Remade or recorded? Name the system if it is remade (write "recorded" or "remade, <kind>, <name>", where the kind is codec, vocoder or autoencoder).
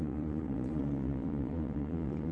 remade, vocoder, Vocos